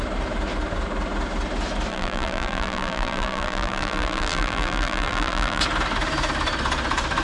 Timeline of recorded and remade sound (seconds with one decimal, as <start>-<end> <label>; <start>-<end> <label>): 0.0-1.9 recorded; 1.9-5.6 remade; 5.6-7.2 recorded